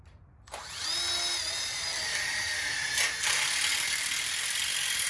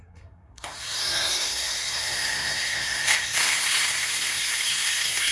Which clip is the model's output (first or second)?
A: second